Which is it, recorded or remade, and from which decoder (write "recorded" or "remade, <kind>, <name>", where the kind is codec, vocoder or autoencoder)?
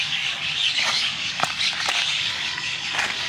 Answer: remade, codec, DAC